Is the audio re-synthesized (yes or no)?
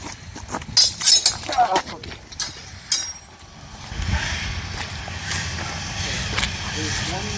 no